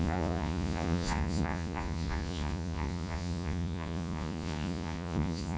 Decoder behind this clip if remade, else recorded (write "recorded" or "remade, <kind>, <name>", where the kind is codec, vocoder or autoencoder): remade, vocoder, Vocos